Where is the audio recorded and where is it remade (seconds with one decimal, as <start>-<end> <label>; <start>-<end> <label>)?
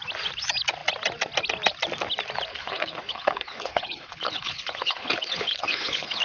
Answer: 0.0-2.5 recorded; 2.5-6.2 remade